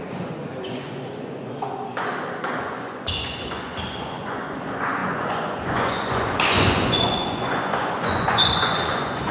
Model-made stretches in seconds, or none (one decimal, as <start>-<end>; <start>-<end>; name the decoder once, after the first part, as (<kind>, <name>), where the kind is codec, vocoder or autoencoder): 0.0-9.3 (vocoder, Vocos)